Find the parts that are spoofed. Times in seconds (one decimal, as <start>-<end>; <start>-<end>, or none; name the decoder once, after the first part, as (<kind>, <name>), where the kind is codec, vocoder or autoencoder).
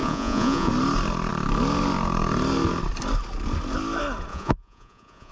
0.0-0.7 (vocoder, Vocos); 4.3-5.3